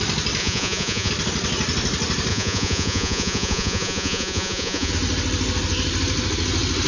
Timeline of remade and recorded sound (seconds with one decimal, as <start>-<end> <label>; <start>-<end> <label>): 0.0-0.4 recorded; 0.4-1.1 remade; 1.1-2.3 recorded; 2.3-4.9 remade; 4.9-6.9 recorded